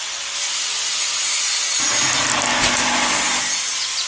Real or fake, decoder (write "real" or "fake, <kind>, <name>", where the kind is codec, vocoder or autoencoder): real